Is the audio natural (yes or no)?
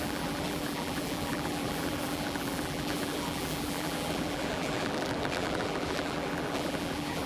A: no